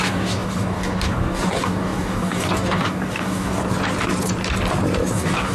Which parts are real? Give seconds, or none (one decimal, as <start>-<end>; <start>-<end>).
3.6-5.1